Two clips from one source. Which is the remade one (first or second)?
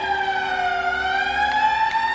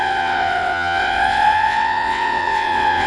second